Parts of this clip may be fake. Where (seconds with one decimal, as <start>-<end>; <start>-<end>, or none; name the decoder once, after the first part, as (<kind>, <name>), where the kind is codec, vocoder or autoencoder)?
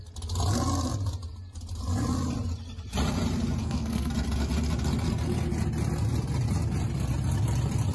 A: 3.6-4.1 (codec, SNAC)